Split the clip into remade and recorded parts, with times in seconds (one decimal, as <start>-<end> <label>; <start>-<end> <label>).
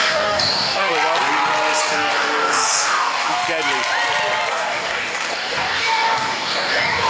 0.0-0.9 remade; 0.9-1.8 recorded; 1.8-3.4 remade; 3.4-4.5 recorded; 4.5-7.1 remade